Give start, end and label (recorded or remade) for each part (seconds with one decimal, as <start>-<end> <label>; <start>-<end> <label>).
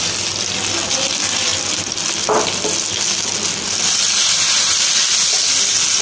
0.0-6.0 recorded